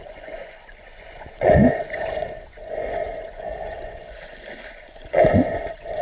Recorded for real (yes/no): no